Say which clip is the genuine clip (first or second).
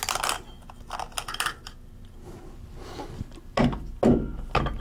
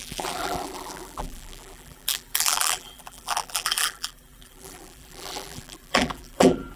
first